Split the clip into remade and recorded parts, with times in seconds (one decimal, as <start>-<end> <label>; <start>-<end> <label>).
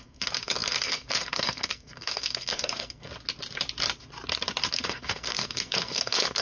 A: 0.0-3.1 remade; 3.1-4.7 recorded; 4.7-6.4 remade